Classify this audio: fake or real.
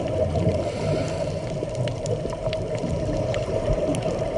fake